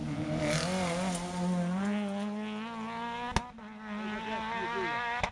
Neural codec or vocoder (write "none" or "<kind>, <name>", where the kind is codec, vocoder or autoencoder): none